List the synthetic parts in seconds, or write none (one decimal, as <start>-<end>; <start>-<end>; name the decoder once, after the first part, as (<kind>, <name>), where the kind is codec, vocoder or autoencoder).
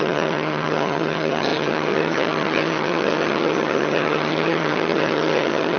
0.0-5.8 (vocoder, HiFi-GAN)